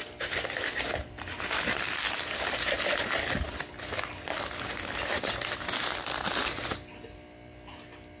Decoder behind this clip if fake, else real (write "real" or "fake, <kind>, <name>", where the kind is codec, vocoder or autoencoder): real